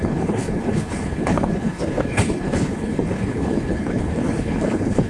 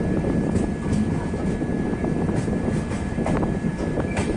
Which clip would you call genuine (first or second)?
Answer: second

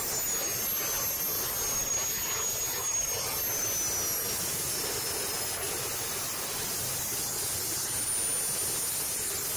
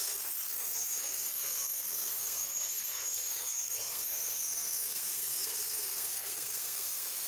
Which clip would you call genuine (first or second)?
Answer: first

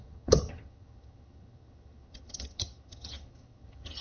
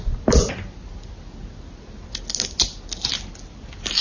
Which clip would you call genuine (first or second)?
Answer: second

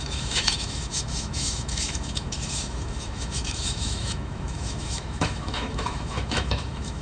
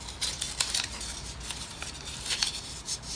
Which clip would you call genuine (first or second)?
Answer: second